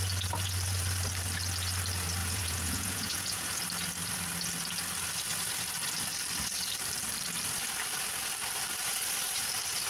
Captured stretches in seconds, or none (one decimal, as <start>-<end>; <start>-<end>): 0.0-2.2; 3.6-9.9